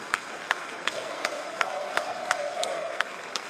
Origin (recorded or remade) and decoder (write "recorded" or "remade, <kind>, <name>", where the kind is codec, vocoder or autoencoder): remade, codec, SNAC